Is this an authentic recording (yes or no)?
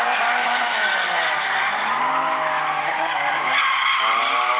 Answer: yes